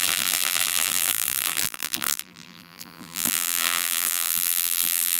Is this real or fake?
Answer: fake